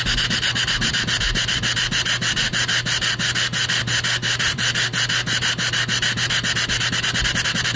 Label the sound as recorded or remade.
recorded